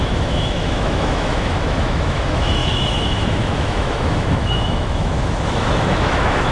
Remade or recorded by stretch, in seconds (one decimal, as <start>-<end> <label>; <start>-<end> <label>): 0.0-6.5 remade